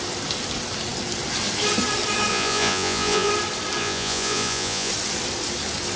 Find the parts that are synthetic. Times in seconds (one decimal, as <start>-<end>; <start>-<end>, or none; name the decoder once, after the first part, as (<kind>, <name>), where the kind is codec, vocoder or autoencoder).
2.3-3.3 (vocoder, Vocos); 3.8-4.9